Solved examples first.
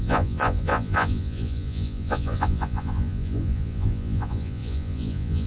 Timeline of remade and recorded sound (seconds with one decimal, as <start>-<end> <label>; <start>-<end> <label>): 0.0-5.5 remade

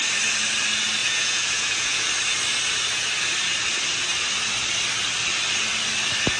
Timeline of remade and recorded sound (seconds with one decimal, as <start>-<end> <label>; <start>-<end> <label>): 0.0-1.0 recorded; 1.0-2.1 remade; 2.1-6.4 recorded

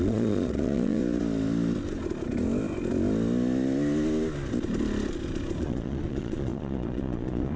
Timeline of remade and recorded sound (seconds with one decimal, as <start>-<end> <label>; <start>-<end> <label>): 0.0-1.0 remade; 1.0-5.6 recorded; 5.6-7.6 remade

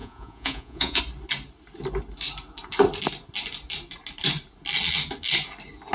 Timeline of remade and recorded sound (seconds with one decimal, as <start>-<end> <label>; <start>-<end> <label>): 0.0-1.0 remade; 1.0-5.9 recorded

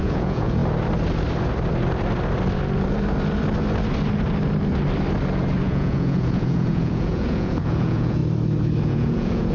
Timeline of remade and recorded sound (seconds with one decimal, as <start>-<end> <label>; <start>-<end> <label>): 0.0-0.6 remade; 0.6-5.6 recorded; 5.6-8.2 remade; 8.2-8.8 recorded; 8.8-9.5 remade

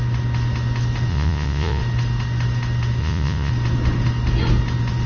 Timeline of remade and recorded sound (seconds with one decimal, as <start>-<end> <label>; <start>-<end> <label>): 0.0-1.1 recorded; 1.1-1.8 remade; 1.8-3.0 recorded; 3.0-3.5 remade; 3.5-5.1 recorded

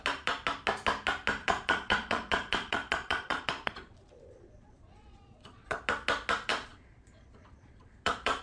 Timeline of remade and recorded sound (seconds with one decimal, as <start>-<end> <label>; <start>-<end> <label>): 0.0-1.4 recorded; 1.4-5.8 remade; 5.8-6.5 recorded; 6.5-8.4 remade